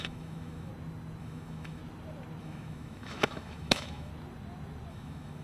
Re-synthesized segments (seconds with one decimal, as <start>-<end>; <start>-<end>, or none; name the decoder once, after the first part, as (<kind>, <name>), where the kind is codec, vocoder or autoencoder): 0.0-0.7 (autoencoder, DAC-VAE); 1.2-1.8; 2.4-4.1; 4.9-5.4